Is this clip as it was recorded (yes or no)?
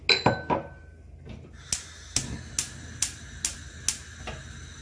yes